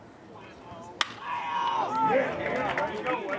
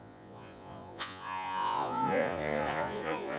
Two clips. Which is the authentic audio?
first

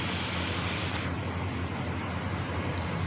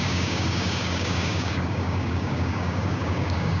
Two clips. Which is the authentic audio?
first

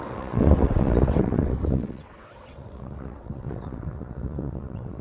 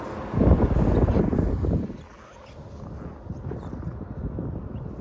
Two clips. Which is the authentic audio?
second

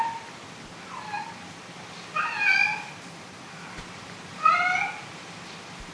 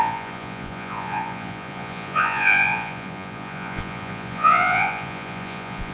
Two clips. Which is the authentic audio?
first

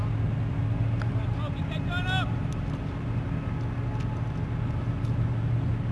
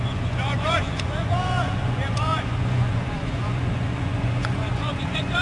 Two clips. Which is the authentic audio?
first